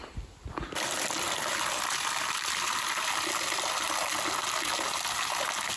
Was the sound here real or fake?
real